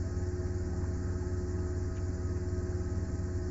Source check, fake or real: real